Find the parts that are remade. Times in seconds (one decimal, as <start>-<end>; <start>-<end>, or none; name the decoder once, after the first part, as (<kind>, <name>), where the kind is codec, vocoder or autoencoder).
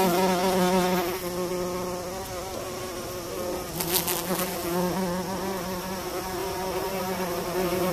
6.4-7.9 (vocoder, BigVGAN v2)